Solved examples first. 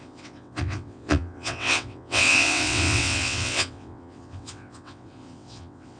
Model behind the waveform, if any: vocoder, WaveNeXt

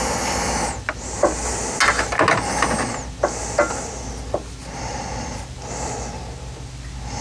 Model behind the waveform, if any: none